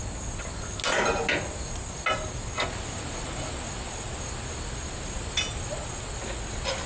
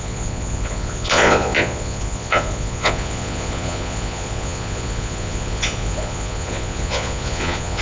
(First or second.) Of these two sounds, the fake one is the second